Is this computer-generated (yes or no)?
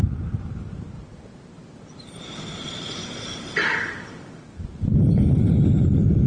yes